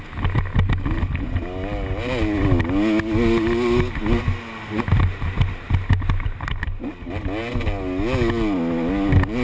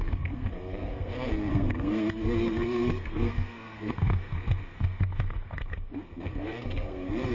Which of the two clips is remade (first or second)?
second